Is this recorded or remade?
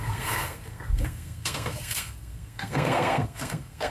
remade